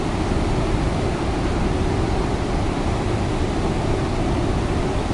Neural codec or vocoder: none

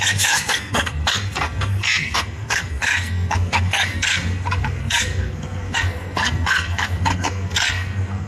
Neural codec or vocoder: codec, SNAC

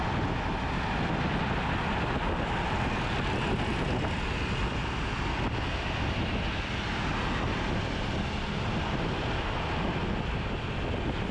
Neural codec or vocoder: none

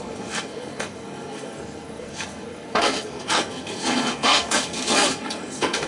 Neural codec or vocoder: codec, SNAC